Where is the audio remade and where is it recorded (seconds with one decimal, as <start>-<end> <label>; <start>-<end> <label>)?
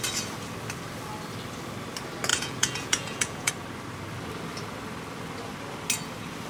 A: 0.0-2.3 recorded; 2.3-3.5 remade; 3.5-6.5 recorded